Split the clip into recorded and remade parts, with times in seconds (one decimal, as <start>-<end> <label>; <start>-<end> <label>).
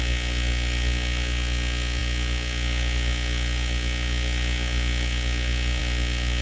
0.0-6.4 recorded